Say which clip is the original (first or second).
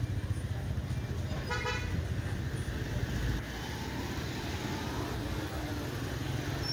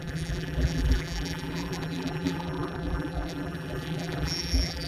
first